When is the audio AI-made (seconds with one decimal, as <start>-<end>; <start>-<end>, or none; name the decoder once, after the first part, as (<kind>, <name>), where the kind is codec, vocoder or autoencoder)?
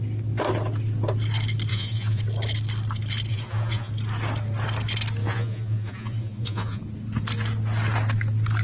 1.7-2.2 (vocoder, Vocos); 3.3-3.9; 5.2-6.8